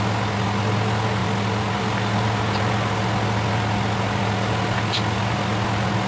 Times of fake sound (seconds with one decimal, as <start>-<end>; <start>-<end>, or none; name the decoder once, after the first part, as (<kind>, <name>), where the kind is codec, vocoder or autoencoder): none